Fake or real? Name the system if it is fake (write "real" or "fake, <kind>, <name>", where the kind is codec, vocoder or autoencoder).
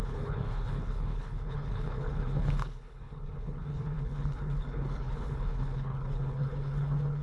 fake, codec, HILCodec